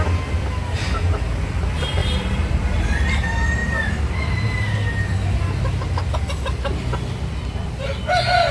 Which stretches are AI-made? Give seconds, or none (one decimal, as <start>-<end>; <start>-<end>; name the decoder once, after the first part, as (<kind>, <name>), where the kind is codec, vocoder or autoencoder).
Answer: 2.0-2.8 (vocoder, BigVGAN v2)